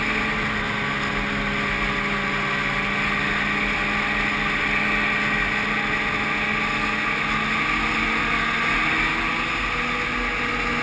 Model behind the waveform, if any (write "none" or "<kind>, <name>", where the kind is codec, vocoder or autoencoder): none